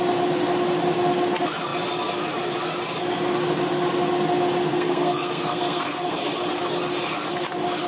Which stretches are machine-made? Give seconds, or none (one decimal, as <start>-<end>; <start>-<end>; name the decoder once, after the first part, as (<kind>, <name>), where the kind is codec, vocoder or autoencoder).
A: 4.7-6.2 (codec, SNAC)

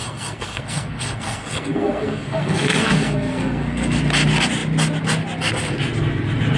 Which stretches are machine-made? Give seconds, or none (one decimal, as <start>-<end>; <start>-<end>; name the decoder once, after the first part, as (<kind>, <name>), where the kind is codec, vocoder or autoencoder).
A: 0.0-4.0 (codec, SNAC)

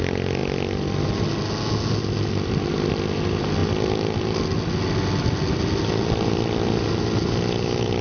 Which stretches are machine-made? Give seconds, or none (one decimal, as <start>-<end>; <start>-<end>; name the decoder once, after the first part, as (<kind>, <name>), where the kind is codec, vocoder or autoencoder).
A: none

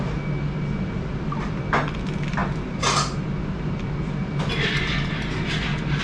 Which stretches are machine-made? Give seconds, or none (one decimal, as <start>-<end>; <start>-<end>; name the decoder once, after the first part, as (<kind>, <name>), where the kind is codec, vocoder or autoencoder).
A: none

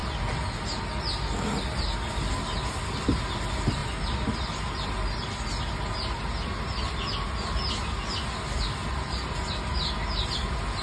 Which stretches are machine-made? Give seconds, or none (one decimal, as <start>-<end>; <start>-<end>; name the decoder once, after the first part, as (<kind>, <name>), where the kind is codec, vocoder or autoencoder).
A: none

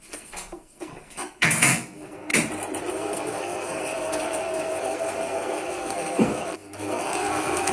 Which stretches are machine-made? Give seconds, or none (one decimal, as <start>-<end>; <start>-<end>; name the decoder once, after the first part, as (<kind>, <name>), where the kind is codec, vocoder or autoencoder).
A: 0.0-2.3 (codec, SNAC); 2.9-7.7

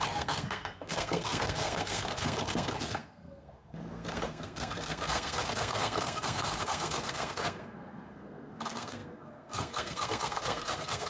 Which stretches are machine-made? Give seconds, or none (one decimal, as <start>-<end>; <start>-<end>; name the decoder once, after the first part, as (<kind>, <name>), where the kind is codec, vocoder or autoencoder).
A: 0.0-11.1 (codec, SNAC)